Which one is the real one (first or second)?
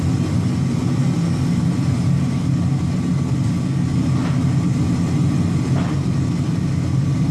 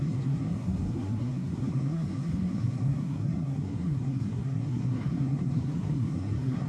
first